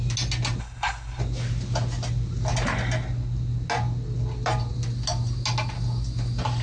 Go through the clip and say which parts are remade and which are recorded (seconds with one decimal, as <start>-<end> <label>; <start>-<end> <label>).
0.0-0.6 recorded; 0.6-1.2 remade; 1.2-6.6 recorded